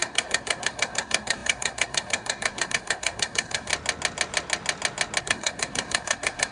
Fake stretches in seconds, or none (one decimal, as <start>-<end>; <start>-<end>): 0.0-3.7; 5.2-6.5